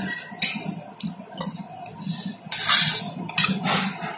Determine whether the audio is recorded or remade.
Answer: recorded